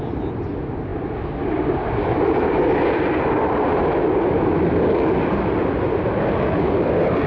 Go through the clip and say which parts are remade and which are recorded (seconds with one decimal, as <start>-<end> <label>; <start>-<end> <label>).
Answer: 0.0-7.3 recorded